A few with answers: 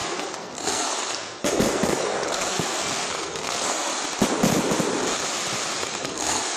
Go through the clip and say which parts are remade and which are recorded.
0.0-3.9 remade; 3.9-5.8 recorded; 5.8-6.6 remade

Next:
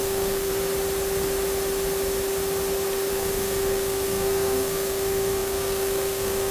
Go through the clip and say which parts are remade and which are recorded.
0.0-0.5 remade; 0.5-3.1 recorded; 3.1-6.5 remade

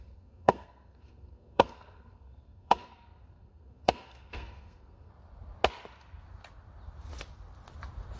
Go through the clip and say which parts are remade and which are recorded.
0.0-5.1 remade; 5.1-8.2 recorded

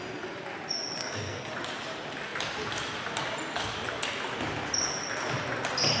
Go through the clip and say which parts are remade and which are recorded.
0.0-1.0 recorded; 1.0-1.5 remade; 1.5-6.0 recorded

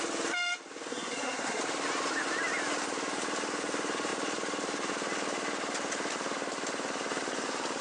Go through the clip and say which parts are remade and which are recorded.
0.0-0.9 recorded; 0.9-1.6 remade; 1.6-7.8 recorded